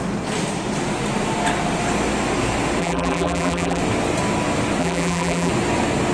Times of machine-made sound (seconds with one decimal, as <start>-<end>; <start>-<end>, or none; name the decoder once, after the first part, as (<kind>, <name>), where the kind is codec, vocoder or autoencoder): 2.8-3.8 (vocoder, BigVGAN v2); 4.8-5.5